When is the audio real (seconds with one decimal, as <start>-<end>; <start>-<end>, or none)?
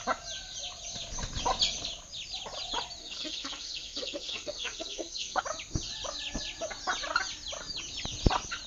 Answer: 0.0-3.0; 5.4-8.7